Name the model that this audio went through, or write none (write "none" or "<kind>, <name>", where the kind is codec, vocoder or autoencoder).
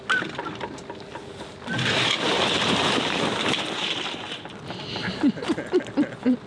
none